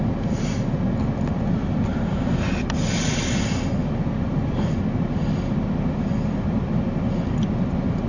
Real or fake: real